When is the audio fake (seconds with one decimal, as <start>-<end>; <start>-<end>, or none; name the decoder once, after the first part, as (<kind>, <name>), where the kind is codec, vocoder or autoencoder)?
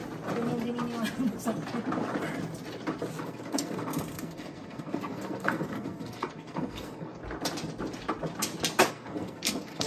3.2-7.2 (codec, SNAC); 8.9-9.9